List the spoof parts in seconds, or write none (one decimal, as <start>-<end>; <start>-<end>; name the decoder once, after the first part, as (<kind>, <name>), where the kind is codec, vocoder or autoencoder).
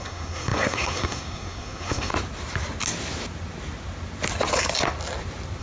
0.0-2.1 (codec, SNAC)